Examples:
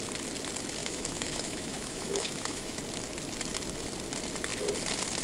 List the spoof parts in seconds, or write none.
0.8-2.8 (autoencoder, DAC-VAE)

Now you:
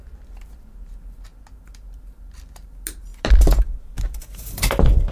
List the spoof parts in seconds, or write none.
none

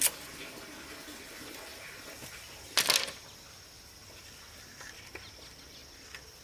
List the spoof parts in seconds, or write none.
none

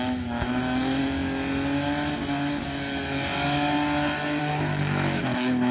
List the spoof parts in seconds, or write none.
0.0-1.0 (autoencoder, DAC-VAE); 4.4-5.7

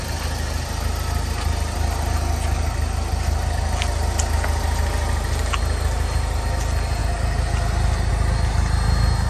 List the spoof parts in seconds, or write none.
none